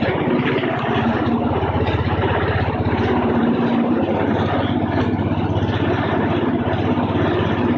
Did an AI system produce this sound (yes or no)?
no